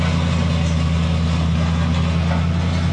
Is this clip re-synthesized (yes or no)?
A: no